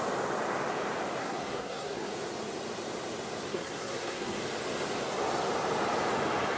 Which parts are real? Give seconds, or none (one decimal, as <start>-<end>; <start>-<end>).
0.0-1.2; 2.1-3.5; 4.4-6.6